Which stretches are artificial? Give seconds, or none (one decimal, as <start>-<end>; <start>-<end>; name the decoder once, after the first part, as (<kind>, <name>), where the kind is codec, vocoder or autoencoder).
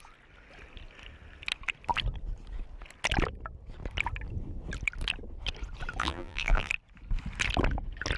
6.0-6.7 (vocoder, BigVGAN v2)